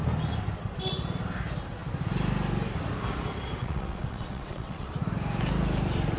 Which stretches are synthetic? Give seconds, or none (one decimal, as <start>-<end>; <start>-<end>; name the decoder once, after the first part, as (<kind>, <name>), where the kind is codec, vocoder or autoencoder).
3.6-4.9 (vocoder, WaveNeXt)